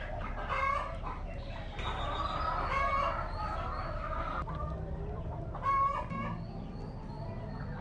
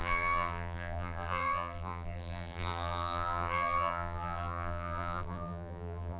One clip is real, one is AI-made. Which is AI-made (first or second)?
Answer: second